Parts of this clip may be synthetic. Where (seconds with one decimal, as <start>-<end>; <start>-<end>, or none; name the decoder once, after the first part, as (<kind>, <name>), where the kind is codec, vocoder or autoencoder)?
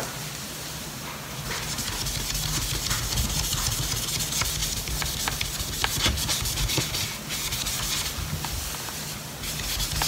3.5-4.1 (vocoder, BigVGAN v2)